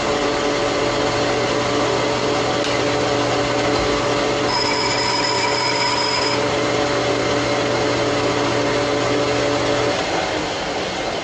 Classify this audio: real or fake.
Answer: real